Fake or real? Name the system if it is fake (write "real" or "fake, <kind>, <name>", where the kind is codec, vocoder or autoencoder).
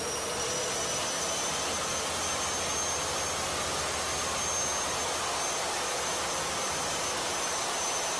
real